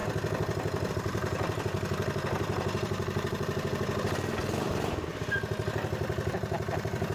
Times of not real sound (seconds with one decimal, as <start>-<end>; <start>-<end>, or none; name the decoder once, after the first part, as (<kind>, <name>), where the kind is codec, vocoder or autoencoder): 0.9-5.1 (vocoder, BigVGAN v2); 6.3-7.1